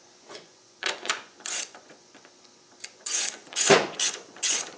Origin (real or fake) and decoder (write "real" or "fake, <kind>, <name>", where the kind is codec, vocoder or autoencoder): fake, vocoder, Vocos